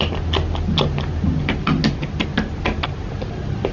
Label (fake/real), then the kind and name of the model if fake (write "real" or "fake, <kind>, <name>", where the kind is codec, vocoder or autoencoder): real